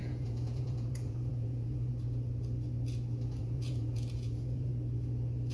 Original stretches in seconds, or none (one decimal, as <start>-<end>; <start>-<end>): 1.9-3.4; 4.7-5.5